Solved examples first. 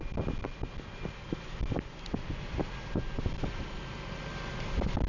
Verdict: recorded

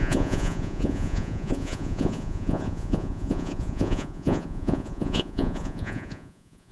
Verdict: remade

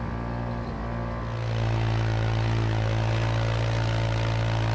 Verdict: recorded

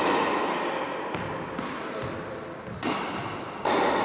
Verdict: recorded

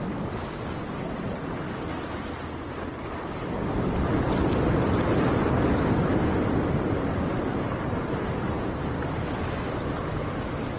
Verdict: recorded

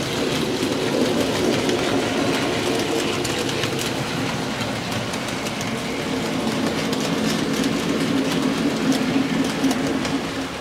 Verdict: recorded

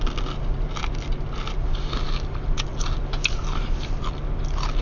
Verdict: recorded